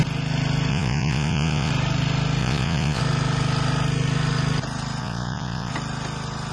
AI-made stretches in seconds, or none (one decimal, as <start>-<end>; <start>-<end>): 0.7-1.7; 2.4-3.0; 5.0-5.7